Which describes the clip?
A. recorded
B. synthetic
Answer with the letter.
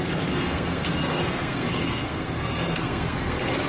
B